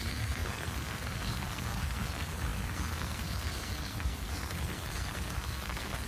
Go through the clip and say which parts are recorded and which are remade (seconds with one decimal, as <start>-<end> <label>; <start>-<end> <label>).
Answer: 0.0-6.1 remade